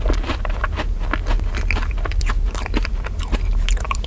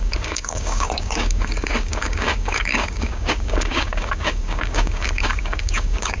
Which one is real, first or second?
first